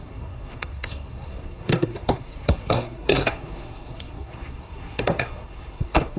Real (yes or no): no